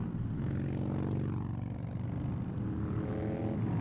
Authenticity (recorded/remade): recorded